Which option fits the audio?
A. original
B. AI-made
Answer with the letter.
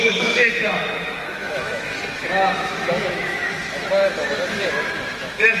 B